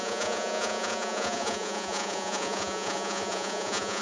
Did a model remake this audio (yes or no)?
yes